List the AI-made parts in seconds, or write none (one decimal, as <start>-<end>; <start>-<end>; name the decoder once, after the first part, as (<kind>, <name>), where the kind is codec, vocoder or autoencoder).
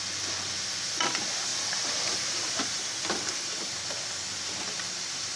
1.5-2.7 (vocoder, BigVGAN v2)